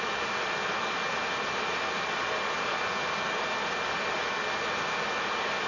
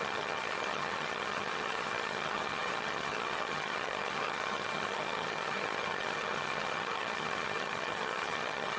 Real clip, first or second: first